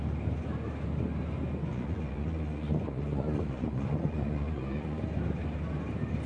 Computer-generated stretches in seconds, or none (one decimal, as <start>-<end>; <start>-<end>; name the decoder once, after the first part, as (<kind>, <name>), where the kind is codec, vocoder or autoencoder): 1.7-5.0 (vocoder, Vocos)